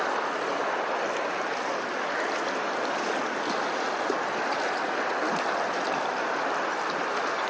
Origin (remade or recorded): recorded